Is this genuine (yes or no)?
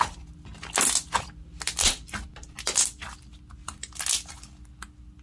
yes